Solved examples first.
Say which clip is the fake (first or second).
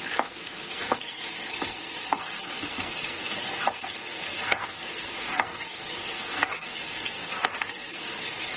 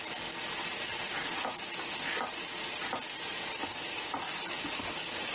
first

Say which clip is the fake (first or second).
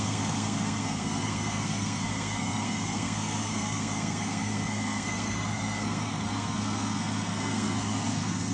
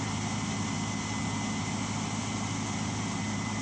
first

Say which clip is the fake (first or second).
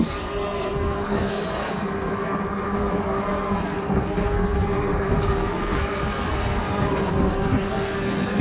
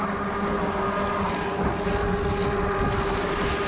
first